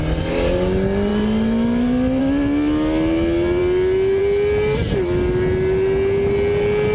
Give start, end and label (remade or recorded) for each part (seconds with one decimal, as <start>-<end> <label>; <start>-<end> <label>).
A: 0.0-6.9 recorded